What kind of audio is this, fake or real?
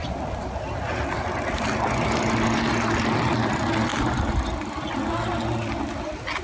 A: real